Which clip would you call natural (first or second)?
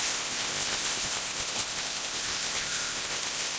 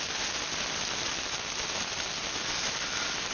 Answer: second